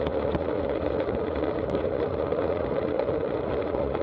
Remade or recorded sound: remade